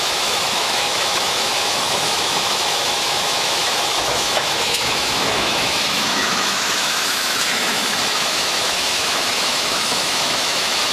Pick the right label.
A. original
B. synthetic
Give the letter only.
B